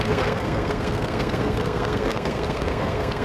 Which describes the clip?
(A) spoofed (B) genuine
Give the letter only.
A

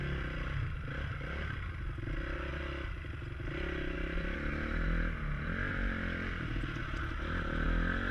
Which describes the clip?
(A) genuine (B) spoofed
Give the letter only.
A